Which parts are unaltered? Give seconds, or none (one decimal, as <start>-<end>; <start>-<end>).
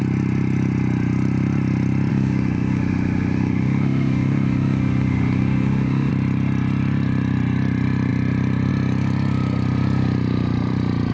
0.0-2.1; 6.1-11.1